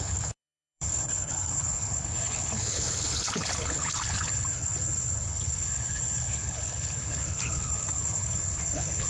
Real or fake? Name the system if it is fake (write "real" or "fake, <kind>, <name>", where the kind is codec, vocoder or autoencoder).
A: fake, codec, HILCodec